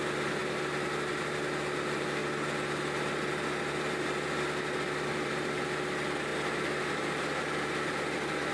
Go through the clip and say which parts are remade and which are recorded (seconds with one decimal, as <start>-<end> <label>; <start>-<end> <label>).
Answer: 0.0-8.5 recorded